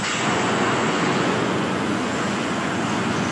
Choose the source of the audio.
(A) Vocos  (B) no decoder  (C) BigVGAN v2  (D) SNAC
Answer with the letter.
A